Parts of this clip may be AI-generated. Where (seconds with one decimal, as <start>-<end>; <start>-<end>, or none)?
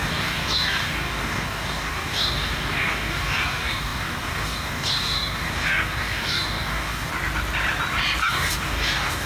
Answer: 0.0-7.1; 8.2-9.3